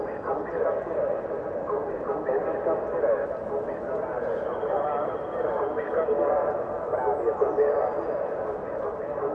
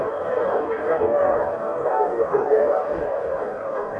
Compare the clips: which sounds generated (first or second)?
second